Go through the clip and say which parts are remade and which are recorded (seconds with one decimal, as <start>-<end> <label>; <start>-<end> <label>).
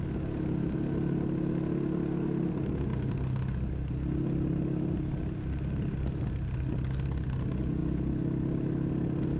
0.0-9.4 recorded